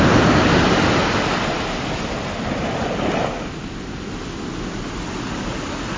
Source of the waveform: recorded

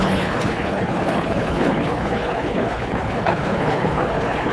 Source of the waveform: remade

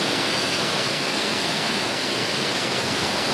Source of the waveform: remade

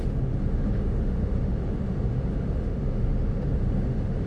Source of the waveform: remade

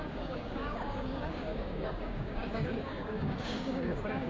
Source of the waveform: remade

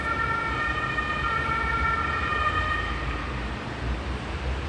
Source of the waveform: recorded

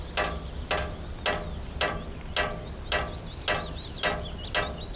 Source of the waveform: recorded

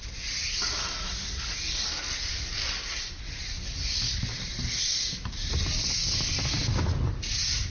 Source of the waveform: recorded